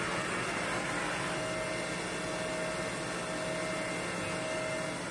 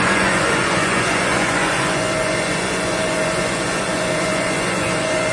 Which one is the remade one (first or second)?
second